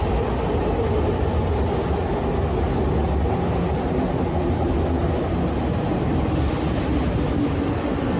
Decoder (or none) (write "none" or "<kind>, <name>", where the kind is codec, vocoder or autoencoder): none